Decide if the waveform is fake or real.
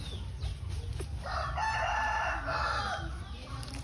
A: real